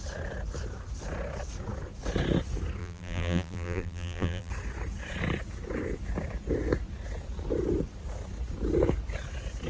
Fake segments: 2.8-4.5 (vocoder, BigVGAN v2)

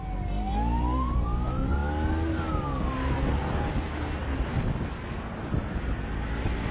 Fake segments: none

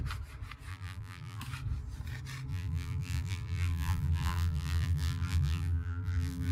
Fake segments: 0.7-1.4 (vocoder, BigVGAN v2); 2.5-6.5

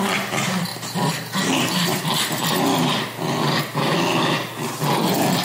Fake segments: 0.7-3.6 (vocoder, BigVGAN v2)

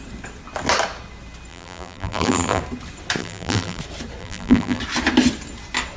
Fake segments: 1.5-2.6 (vocoder, BigVGAN v2); 3.2-3.8; 4.2-4.8